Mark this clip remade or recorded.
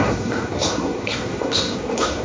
remade